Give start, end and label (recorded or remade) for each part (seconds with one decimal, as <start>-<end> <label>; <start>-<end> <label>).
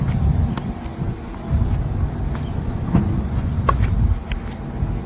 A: 0.0-2.5 recorded; 2.5-3.6 remade; 3.6-5.1 recorded